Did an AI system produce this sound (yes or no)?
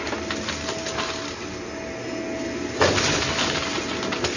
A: no